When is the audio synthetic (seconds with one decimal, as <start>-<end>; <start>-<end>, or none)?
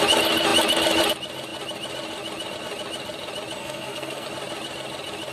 3.6-4.3